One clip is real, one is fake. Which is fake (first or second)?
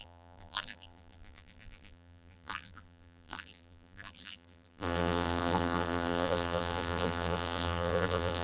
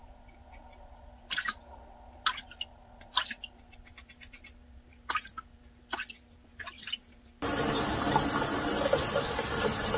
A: first